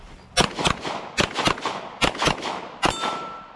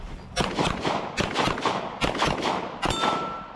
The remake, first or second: second